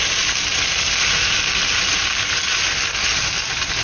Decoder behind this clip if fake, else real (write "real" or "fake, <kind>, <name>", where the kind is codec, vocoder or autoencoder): real